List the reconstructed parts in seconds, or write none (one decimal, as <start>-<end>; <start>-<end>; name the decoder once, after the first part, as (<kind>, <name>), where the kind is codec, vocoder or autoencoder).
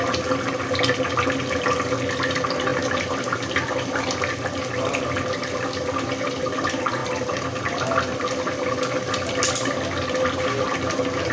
none